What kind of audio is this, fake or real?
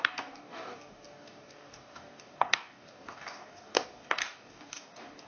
fake